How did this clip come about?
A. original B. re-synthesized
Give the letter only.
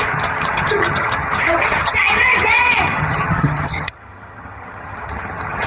B